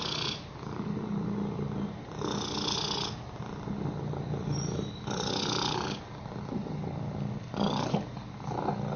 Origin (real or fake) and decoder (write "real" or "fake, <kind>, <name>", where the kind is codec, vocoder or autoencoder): real